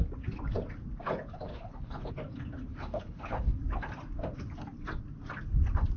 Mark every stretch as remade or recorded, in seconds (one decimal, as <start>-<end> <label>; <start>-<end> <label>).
0.0-1.5 recorded; 1.5-2.1 remade; 2.1-2.7 recorded; 2.7-3.6 remade; 3.6-6.0 recorded

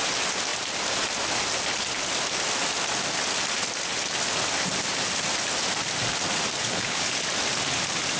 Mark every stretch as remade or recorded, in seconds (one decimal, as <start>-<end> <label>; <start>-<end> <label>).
0.0-6.6 recorded; 6.6-7.2 remade; 7.2-8.2 recorded

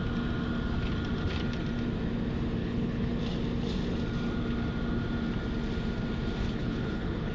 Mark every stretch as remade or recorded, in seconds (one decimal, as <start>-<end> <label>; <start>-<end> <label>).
0.0-2.6 recorded; 2.6-3.1 remade; 3.1-6.4 recorded; 6.4-7.3 remade

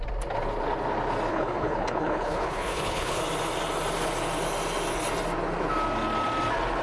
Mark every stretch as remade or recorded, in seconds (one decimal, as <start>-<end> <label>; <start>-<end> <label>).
0.0-1.3 recorded; 1.3-3.2 remade; 3.2-6.8 recorded

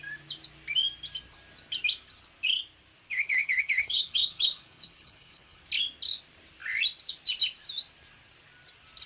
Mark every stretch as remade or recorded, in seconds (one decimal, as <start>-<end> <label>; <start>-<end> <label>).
0.0-3.1 recorded; 3.1-5.6 remade; 5.6-9.1 recorded

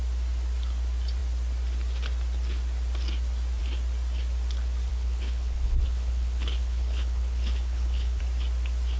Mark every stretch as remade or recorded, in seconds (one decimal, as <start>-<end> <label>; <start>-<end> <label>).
0.0-4.9 recorded; 4.9-8.2 remade; 8.2-9.0 recorded